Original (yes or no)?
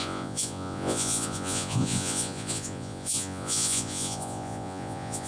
no